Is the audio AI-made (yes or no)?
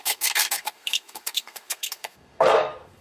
yes